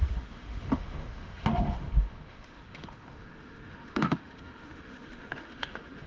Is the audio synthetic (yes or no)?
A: yes